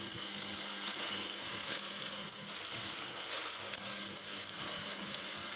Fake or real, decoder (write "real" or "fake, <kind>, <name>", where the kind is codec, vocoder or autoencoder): fake, codec, SNAC